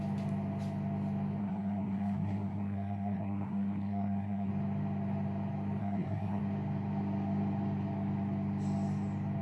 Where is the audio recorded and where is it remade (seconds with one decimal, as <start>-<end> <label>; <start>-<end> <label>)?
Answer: 0.0-1.4 recorded; 1.4-4.5 remade; 4.5-5.8 recorded; 5.8-6.4 remade; 6.4-9.4 recorded